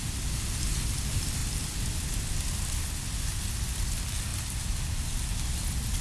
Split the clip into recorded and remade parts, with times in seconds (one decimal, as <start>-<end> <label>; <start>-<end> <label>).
0.0-6.0 recorded